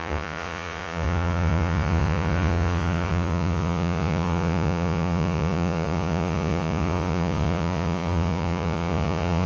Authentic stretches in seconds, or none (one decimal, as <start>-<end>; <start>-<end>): none